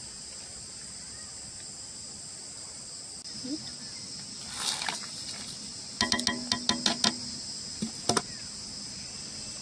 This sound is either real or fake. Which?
real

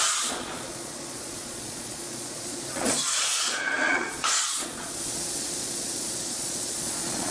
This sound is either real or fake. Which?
fake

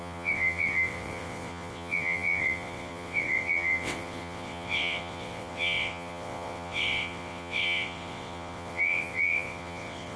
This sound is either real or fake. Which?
fake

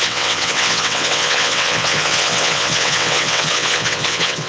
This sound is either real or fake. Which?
fake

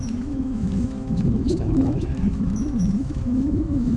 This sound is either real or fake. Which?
fake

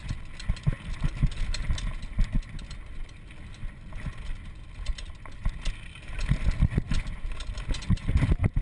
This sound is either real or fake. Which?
real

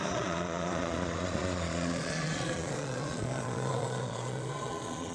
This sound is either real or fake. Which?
fake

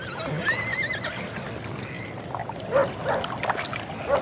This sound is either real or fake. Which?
real